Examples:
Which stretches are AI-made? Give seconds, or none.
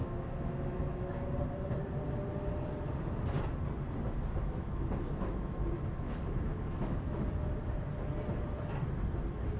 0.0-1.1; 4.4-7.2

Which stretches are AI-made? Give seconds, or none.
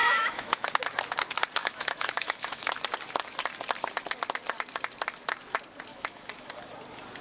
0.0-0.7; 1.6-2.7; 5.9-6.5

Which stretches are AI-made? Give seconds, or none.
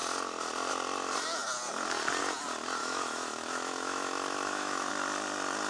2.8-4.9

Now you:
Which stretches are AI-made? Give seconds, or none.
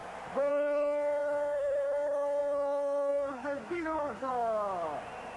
0.5-4.3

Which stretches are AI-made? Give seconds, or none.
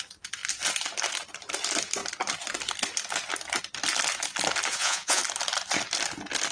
4.7-5.2